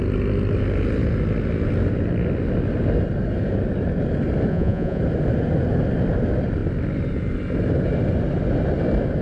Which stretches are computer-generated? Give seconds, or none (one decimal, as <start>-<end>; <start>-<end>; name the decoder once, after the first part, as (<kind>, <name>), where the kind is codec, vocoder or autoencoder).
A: 4.5-5.0 (vocoder, Vocos)